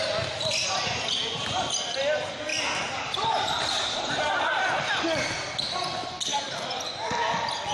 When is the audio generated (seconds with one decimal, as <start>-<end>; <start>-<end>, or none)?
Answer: 2.5-4.6; 6.3-6.9